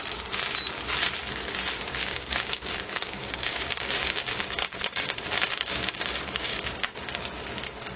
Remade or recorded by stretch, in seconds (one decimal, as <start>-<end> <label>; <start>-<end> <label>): 0.0-2.0 recorded; 2.0-6.6 remade; 6.6-8.0 recorded